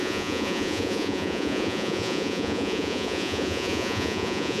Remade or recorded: remade